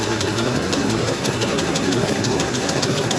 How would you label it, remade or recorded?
remade